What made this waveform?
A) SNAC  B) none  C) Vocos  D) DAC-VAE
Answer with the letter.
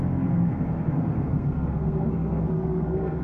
A